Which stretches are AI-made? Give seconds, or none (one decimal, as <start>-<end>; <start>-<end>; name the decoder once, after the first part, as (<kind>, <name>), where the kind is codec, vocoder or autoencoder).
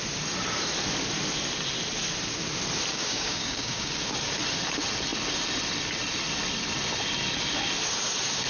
2.9-3.9 (codec, DAC)